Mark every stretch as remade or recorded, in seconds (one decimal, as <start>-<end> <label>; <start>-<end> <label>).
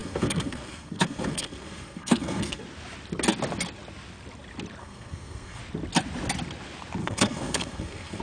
0.0-2.6 remade; 2.6-4.8 recorded; 4.8-5.6 remade; 5.6-7.0 recorded; 7.0-8.2 remade